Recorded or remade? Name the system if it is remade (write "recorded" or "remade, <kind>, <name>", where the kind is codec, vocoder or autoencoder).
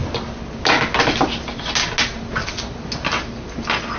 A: recorded